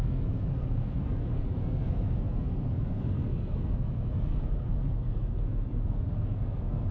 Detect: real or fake fake